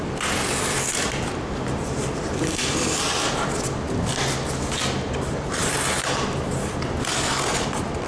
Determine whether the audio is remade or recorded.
recorded